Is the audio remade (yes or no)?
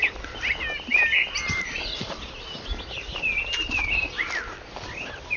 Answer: no